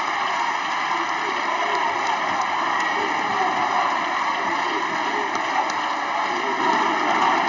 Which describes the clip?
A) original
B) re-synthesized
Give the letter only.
A